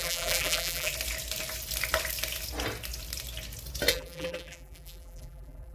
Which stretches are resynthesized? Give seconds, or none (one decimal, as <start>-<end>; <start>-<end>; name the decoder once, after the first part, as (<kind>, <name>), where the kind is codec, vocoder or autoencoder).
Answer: 0.0-0.9 (vocoder, BigVGAN v2); 3.9-5.7